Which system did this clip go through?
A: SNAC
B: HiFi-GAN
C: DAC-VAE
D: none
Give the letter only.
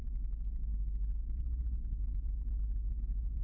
D